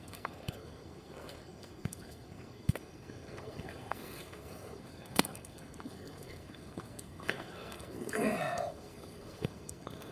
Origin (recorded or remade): remade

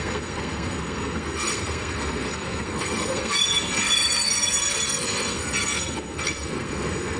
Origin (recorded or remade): remade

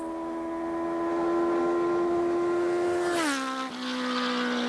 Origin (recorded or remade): recorded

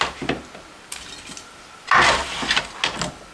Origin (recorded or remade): recorded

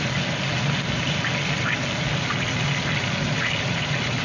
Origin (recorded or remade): recorded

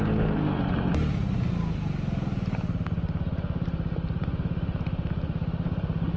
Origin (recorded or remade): recorded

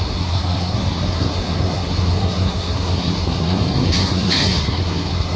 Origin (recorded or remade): remade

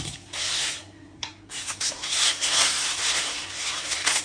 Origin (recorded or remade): remade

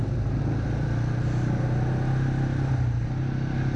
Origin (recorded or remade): recorded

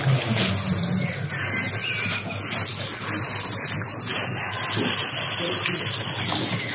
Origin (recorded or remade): recorded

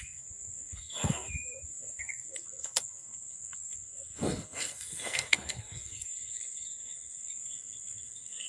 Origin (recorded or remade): remade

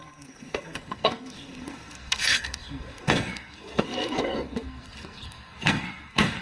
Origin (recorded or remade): remade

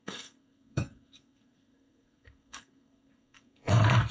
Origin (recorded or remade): remade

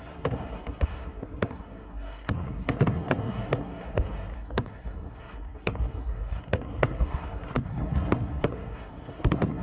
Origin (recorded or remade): remade